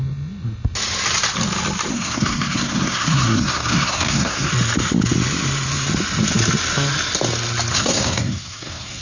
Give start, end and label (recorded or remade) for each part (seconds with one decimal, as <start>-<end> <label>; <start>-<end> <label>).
0.0-1.9 recorded; 1.9-4.5 remade; 4.5-7.7 recorded; 7.7-9.0 remade